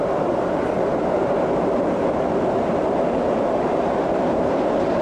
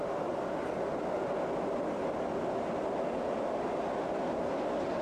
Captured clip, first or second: second